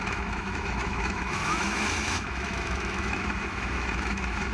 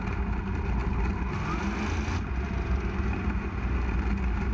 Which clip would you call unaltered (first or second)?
second